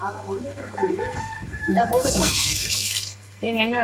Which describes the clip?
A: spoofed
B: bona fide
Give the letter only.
A